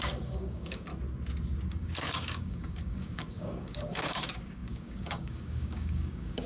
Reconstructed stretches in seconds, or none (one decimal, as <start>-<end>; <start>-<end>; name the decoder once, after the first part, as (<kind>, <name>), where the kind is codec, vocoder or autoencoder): 0.0-0.9 (codec, DAC); 1.7-6.5